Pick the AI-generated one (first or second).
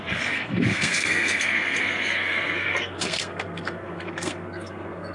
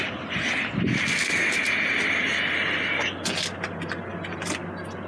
first